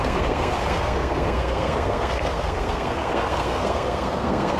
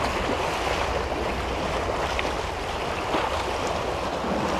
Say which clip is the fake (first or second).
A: first